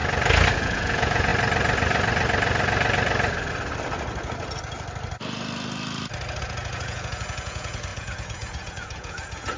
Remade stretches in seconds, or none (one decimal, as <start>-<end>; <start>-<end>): 0.6-1.3; 6.4-9.6